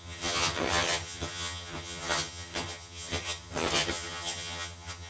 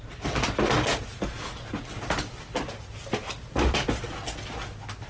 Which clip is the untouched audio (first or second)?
second